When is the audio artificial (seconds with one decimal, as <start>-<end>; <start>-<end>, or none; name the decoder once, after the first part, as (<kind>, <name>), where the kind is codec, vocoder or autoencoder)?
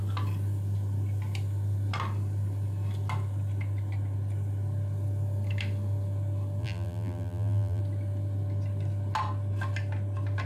6.6-7.8 (vocoder, BigVGAN v2)